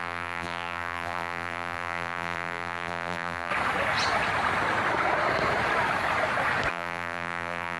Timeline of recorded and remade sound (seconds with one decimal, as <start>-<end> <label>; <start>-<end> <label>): 0.0-3.5 remade; 3.5-6.7 recorded; 6.7-7.8 remade